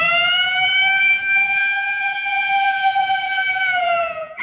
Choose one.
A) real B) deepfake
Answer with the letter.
B